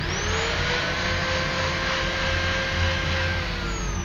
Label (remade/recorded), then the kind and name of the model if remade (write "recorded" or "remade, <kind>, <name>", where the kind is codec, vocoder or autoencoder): recorded